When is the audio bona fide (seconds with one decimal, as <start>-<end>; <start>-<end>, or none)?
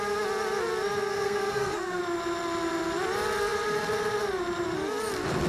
0.0-1.1; 2.0-5.5